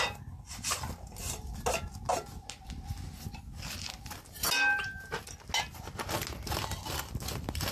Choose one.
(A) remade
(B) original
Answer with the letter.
B